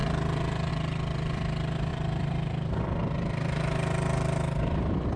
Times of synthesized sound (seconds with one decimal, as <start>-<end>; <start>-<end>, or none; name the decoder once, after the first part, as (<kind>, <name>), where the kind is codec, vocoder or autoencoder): 0.0-0.7 (vocoder, BigVGAN v2); 1.9-5.2